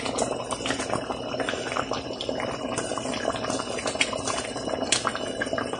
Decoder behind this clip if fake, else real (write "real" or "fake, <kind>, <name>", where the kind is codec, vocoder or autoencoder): real